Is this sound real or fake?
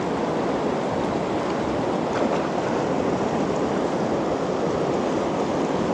real